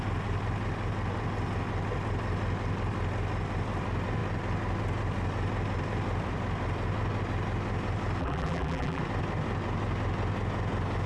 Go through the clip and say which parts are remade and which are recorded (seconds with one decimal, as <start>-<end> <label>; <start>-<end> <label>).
0.0-8.2 recorded; 8.2-9.0 remade; 9.0-11.1 recorded